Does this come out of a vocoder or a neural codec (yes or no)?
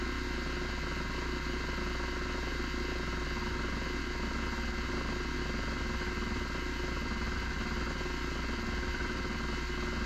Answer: no